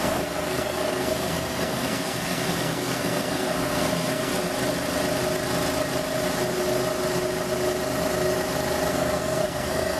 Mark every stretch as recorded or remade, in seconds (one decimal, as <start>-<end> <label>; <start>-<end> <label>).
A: 0.0-4.3 remade; 4.3-8.9 recorded; 8.9-10.0 remade